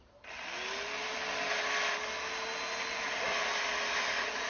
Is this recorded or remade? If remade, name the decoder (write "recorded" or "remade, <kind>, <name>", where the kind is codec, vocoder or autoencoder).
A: recorded